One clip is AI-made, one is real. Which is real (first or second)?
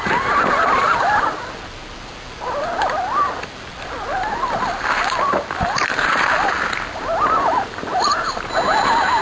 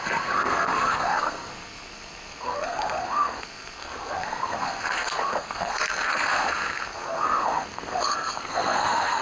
first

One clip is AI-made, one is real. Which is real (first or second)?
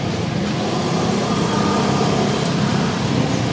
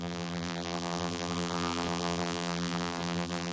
first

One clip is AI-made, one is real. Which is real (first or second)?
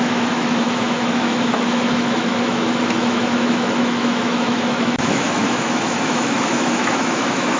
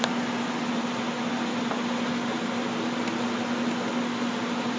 second